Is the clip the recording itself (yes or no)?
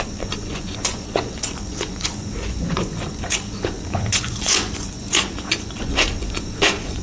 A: no